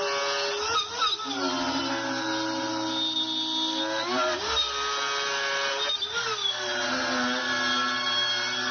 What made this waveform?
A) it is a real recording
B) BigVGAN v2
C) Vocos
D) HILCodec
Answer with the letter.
A